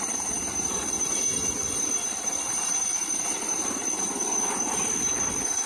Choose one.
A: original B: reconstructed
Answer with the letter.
A